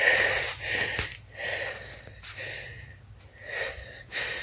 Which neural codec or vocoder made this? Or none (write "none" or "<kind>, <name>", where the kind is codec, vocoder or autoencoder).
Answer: none